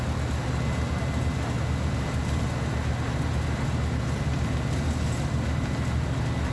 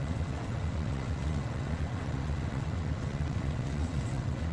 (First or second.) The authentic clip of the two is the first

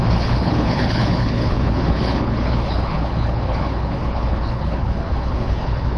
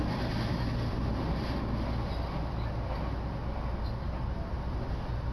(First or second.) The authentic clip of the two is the second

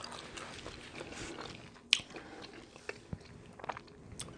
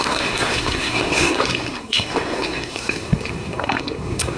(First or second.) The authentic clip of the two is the first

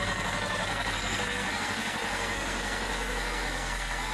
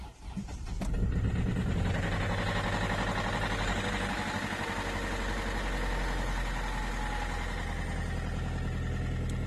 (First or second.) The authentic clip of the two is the second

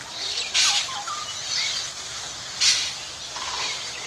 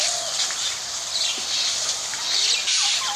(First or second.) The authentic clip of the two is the second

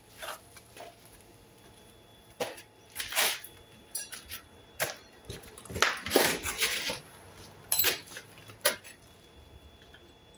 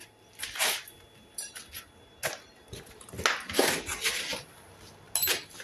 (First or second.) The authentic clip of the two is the second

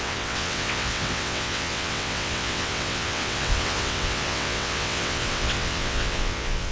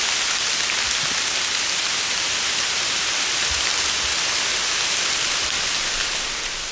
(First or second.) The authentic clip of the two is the second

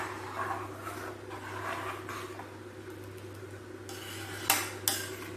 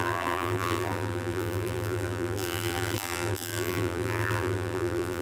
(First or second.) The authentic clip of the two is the first